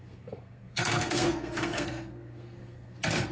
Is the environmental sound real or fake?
fake